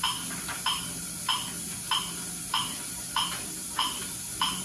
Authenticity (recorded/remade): recorded